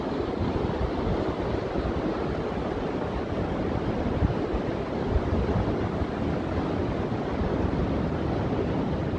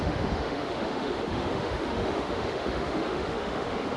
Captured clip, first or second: first